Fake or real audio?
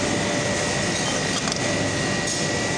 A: real